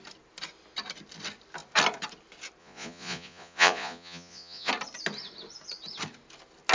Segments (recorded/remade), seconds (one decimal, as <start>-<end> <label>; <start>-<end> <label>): 0.0-2.6 recorded; 2.6-4.7 remade; 4.7-6.7 recorded